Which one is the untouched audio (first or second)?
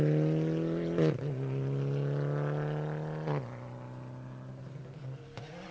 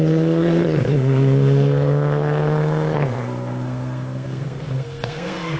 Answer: first